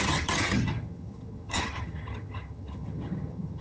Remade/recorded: remade